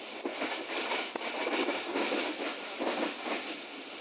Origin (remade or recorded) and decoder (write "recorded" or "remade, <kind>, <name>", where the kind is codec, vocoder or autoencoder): recorded